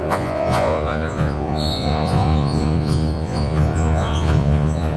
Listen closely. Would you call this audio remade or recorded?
remade